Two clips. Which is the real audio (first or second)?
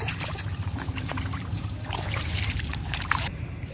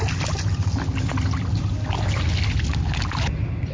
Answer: second